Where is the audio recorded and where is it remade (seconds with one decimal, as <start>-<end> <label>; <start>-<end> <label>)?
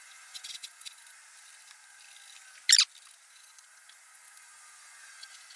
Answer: 0.0-1.2 remade; 1.2-3.3 recorded; 3.3-5.6 remade